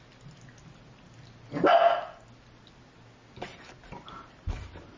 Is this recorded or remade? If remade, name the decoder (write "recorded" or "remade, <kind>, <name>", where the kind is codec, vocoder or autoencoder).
recorded